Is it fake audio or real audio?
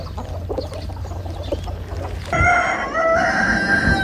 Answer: real